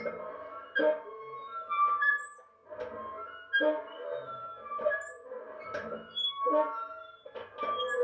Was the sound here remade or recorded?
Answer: recorded